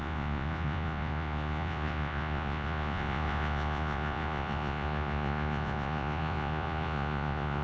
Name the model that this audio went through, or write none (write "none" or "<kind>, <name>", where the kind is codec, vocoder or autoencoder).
vocoder, Vocos